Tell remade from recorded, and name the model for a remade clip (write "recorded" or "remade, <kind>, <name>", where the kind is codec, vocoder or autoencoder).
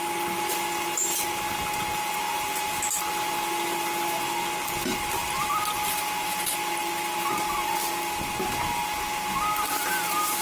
recorded